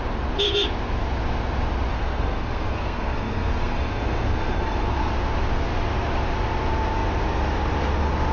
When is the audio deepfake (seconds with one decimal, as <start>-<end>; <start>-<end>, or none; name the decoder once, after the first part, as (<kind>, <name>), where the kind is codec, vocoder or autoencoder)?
1.9-5.1 (codec, SNAC)